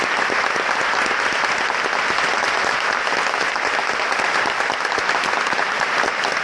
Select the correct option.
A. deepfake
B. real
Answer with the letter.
B